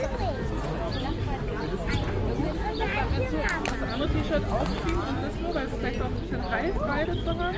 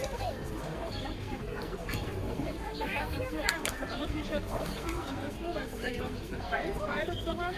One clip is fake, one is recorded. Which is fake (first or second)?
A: second